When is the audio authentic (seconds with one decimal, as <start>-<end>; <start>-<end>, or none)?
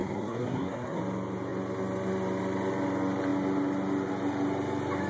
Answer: 1.0-5.1